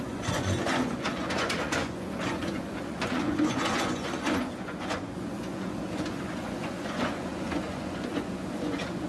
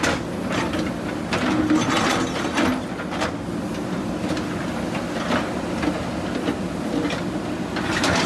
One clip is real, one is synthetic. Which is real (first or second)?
second